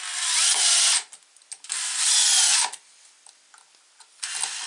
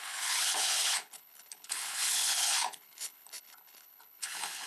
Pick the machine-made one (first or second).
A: second